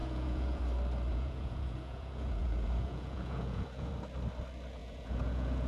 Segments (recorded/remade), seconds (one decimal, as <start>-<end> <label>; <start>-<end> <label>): 0.0-0.6 remade; 0.6-1.1 recorded; 1.1-3.9 remade; 3.9-4.8 recorded; 4.8-5.7 remade

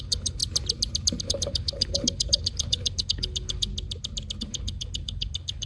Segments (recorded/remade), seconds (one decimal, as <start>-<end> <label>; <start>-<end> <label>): 0.0-0.4 remade; 0.4-1.2 recorded; 1.2-3.7 remade; 3.7-4.4 recorded; 4.4-5.7 remade

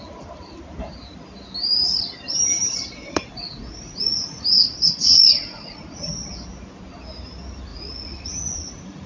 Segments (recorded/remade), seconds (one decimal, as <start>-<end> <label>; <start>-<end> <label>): 0.0-3.0 recorded; 3.0-6.1 remade; 6.1-7.7 recorded; 7.7-9.1 remade

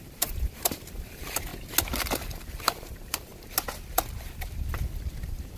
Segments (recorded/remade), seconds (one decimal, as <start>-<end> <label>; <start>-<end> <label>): 0.0-1.5 remade; 1.5-2.6 recorded; 2.6-3.3 remade; 3.3-5.1 recorded; 5.1-5.6 remade

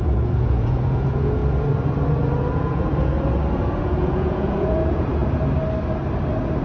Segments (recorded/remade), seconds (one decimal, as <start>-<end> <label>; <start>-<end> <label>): 0.0-1.4 remade; 1.4-2.5 recorded; 2.5-3.1 remade; 3.1-3.8 recorded; 3.8-5.2 remade; 5.2-6.6 recorded

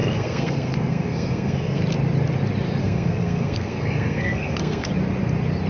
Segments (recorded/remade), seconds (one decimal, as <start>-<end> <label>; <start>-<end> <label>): 0.0-1.8 remade; 1.8-2.8 recorded; 2.8-4.9 remade; 4.9-5.7 recorded

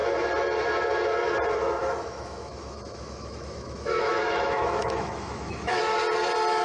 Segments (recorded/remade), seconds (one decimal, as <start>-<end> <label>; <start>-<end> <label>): 0.0-1.8 recorded; 1.8-5.8 remade; 5.8-6.6 recorded